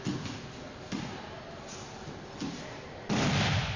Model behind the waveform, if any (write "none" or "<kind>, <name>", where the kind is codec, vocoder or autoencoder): none